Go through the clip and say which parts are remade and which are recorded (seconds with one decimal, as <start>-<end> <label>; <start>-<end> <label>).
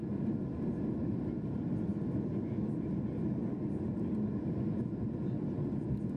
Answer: 0.0-1.0 remade; 1.0-1.9 recorded; 1.9-4.3 remade; 4.3-6.2 recorded